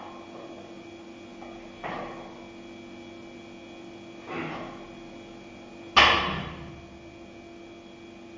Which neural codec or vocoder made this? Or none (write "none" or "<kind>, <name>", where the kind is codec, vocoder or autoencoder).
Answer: none